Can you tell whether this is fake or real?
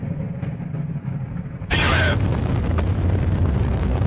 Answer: fake